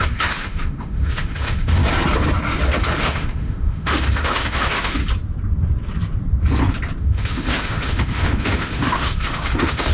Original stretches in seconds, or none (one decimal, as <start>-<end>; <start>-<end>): 1.8-3.0; 5.0-7.0